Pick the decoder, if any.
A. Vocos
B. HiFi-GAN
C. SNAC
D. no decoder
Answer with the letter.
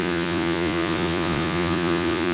A